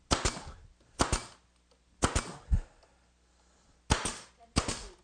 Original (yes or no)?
yes